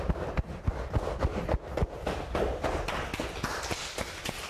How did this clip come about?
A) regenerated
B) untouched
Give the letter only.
B